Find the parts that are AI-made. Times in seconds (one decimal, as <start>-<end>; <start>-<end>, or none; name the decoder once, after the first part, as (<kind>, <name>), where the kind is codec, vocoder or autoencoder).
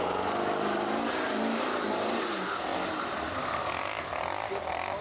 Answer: none